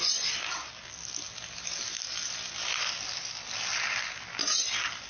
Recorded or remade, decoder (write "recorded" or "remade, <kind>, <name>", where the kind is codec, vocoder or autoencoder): recorded